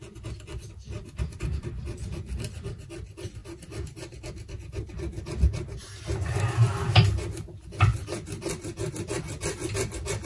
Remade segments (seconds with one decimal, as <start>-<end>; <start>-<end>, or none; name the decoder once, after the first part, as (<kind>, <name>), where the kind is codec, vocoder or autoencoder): none